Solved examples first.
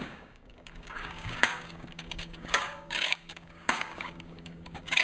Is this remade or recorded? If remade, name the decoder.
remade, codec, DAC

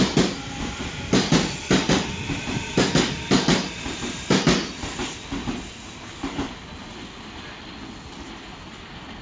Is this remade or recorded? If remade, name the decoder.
recorded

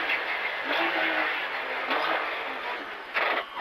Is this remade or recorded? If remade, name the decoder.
recorded